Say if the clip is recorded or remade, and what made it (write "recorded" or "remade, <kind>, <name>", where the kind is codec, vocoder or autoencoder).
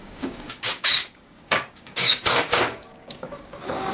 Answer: remade, codec, DAC